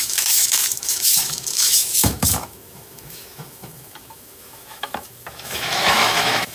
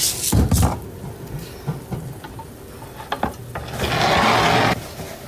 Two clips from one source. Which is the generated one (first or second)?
first